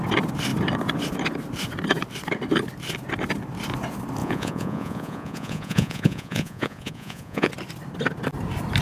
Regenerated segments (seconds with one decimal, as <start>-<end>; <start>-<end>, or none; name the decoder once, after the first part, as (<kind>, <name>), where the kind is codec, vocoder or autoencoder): 4.2-7.5 (vocoder, Vocos)